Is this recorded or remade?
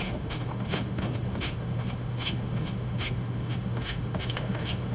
remade